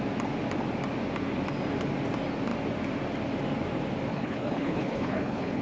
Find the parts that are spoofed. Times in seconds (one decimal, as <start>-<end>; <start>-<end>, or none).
4.1-5.6